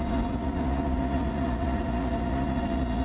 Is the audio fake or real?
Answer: fake